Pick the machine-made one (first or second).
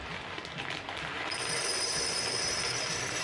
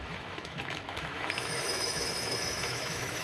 second